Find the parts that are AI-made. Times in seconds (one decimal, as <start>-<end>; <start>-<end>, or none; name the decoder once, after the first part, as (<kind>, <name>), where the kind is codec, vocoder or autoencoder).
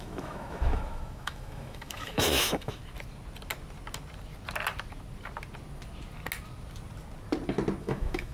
0.0-2.8 (autoencoder, DAC-VAE); 7.8-8.3